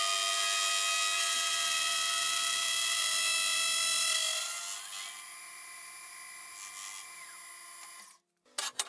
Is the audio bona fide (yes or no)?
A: yes